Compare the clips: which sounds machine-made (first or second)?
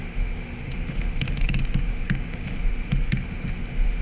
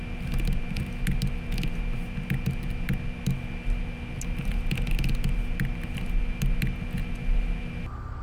first